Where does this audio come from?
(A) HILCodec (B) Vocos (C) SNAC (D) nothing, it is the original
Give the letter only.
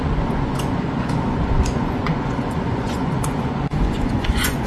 B